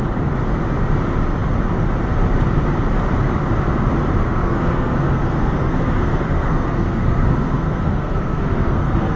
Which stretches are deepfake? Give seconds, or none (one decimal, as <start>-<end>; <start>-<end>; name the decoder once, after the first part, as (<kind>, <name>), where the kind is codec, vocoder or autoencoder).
4.2-9.2 (codec, SNAC)